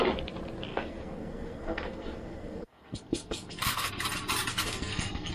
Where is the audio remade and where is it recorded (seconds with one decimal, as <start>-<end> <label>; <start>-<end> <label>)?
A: 0.0-0.7 recorded; 0.7-3.9 remade; 3.9-4.5 recorded; 4.5-5.3 remade